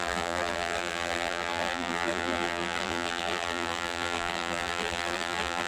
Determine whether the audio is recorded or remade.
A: remade